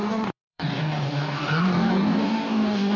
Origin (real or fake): fake